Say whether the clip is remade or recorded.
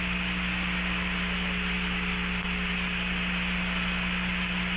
recorded